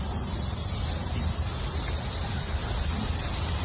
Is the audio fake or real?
real